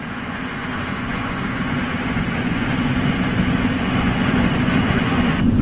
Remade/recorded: remade